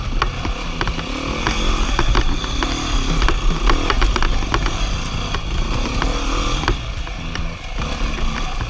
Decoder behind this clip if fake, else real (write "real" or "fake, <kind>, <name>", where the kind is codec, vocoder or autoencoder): real